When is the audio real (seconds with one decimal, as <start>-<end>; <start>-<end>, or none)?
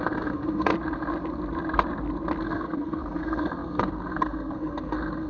0.7-2.4